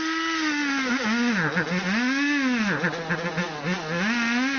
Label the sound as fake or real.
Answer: real